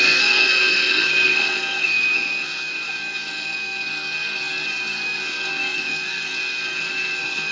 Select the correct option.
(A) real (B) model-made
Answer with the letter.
B